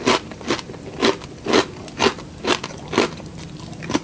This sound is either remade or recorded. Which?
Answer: recorded